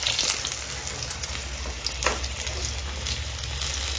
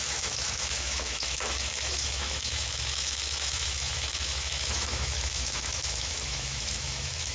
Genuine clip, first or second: first